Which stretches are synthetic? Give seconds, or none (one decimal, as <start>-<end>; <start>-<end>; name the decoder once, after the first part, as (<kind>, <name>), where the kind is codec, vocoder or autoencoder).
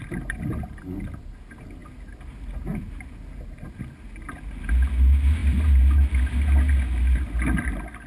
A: none